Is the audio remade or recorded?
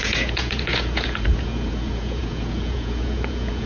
remade